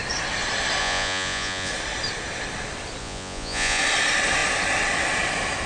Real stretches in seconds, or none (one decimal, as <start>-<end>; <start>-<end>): 0.0-0.8; 1.7-3.0; 3.8-5.7